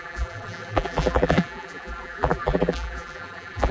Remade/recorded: remade